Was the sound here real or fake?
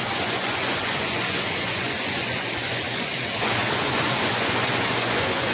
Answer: fake